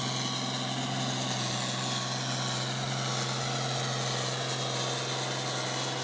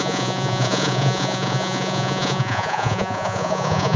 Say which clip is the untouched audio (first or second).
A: first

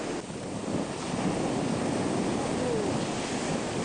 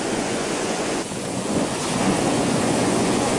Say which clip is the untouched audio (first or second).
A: first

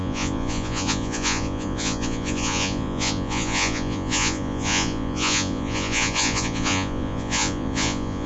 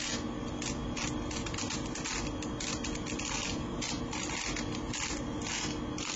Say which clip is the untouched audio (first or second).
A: second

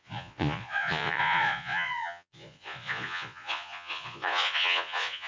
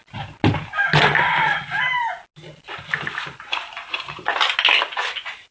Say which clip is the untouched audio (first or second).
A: second